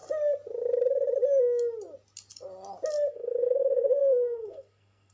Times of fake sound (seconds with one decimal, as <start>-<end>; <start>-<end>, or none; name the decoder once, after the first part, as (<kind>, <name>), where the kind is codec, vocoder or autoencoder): 3.1-5.1 (codec, SNAC)